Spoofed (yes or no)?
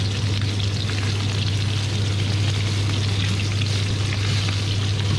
no